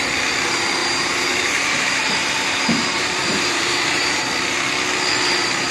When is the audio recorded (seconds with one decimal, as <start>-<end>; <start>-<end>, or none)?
0.0-0.8; 4.2-5.7